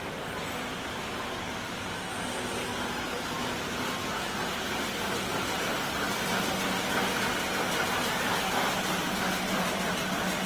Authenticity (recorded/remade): recorded